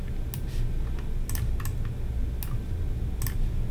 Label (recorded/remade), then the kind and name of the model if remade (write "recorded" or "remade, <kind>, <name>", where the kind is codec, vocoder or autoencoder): recorded